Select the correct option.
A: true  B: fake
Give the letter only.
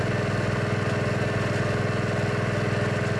A